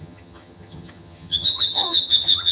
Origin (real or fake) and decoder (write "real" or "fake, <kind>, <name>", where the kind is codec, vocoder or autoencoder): fake, vocoder, HiFi-GAN